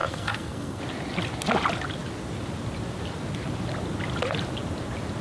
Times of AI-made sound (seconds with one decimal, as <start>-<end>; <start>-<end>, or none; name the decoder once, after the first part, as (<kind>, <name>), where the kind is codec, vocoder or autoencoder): 0.0-0.8 (codec, SNAC)